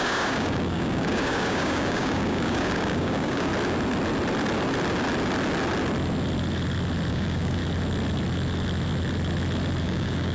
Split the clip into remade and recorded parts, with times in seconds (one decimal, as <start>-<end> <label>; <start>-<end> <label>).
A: 0.0-3.5 remade; 3.5-7.1 recorded; 7.1-7.6 remade; 7.6-9.8 recorded; 9.8-10.3 remade